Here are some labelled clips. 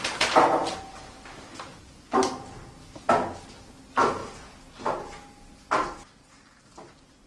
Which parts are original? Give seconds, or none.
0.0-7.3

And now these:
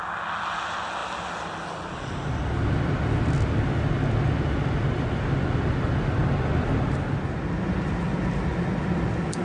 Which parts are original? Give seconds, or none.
0.0-9.4

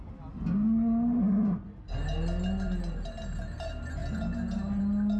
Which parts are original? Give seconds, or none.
0.0-5.2

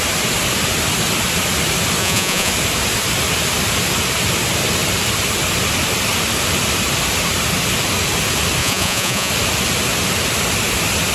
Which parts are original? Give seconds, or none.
0.0-2.0; 2.5-8.6; 9.3-11.1

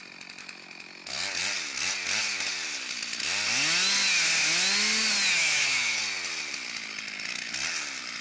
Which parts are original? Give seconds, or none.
0.0-0.4; 1.1-5.4; 6.0-8.2